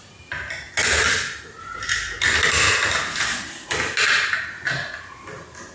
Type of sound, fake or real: real